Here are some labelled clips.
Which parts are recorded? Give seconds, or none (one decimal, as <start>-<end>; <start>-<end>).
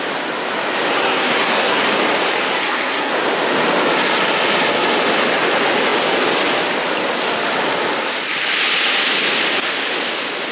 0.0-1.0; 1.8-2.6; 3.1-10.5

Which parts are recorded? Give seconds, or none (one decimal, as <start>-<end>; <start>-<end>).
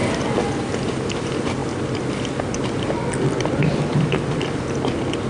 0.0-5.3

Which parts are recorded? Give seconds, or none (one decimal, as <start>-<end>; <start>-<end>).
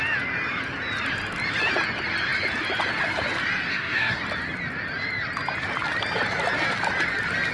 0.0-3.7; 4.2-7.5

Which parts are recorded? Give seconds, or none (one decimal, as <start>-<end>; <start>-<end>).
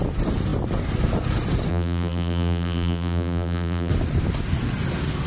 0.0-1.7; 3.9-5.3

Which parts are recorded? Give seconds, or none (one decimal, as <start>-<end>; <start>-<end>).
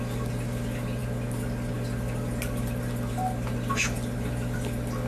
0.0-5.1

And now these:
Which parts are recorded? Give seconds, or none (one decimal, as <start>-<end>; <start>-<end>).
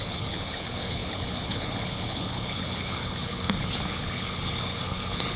none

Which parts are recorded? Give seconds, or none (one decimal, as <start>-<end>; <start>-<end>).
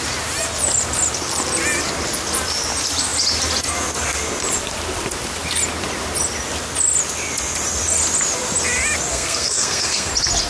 0.0-9.1; 10.1-10.5